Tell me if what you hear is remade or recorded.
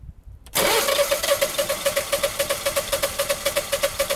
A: remade